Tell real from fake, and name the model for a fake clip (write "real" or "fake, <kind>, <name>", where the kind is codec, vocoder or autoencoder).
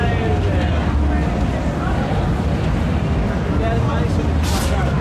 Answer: real